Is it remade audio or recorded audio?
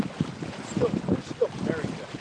recorded